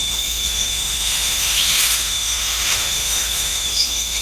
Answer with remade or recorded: remade